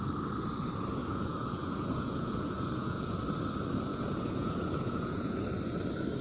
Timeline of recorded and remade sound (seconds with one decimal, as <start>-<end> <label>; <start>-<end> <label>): 0.0-1.0 recorded; 1.0-3.2 remade; 3.2-3.9 recorded; 3.9-5.4 remade; 5.4-6.2 recorded